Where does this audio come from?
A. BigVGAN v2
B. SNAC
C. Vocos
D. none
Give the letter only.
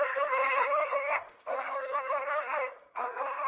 B